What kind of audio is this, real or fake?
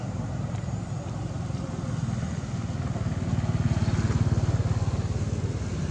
real